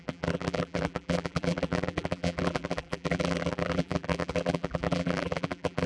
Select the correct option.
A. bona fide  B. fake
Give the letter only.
B